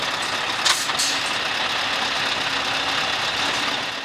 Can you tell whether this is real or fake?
real